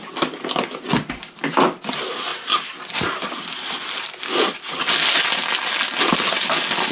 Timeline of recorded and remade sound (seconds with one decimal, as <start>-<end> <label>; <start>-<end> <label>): 0.0-6.9 recorded

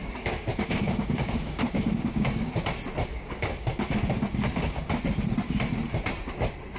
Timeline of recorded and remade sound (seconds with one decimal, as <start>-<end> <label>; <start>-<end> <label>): 0.0-2.6 remade; 2.6-3.1 recorded; 3.1-3.9 remade; 3.9-4.5 recorded; 4.5-5.0 remade; 5.0-6.8 recorded

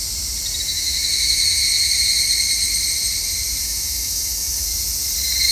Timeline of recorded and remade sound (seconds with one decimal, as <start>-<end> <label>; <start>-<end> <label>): 0.0-0.6 recorded; 0.6-1.6 remade; 1.6-3.6 recorded; 3.6-4.7 remade; 4.7-5.5 recorded

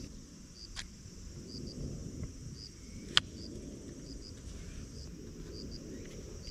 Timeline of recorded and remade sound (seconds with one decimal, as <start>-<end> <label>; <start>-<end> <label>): 0.0-6.5 recorded

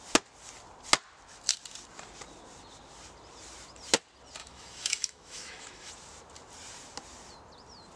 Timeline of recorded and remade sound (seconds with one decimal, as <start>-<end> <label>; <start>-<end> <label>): 0.0-4.4 recorded; 4.4-5.9 remade; 5.9-8.0 recorded